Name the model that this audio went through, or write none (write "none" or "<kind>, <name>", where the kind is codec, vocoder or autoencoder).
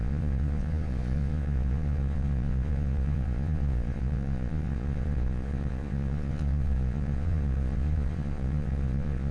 vocoder, Vocos